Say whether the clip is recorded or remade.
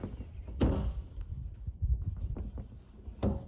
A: recorded